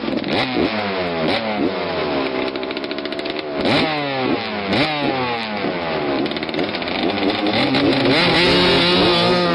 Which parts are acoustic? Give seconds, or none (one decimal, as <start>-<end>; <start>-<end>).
0.0-9.5